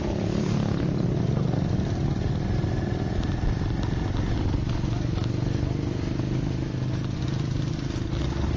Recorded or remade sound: recorded